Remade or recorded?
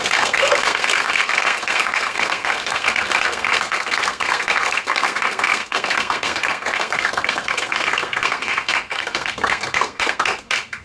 remade